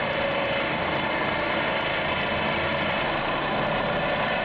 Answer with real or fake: real